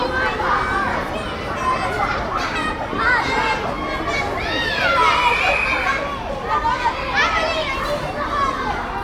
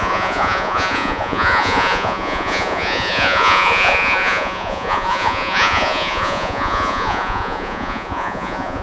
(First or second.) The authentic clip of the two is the first